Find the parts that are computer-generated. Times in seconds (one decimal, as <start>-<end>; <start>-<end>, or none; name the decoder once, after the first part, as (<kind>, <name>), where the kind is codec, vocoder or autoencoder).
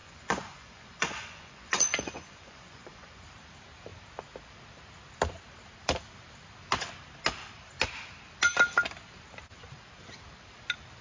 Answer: 0.0-3.2 (vocoder, Vocos)